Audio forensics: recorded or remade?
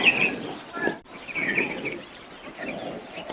recorded